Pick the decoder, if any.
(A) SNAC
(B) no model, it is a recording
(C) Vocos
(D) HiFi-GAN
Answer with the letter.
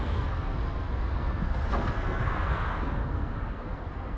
A